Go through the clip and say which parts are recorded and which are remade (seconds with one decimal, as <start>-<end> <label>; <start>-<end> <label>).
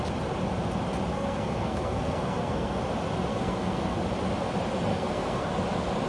0.0-1.1 recorded; 1.1-2.8 remade; 2.8-3.3 recorded; 3.3-4.0 remade; 4.0-4.9 recorded; 4.9-5.5 remade; 5.5-6.1 recorded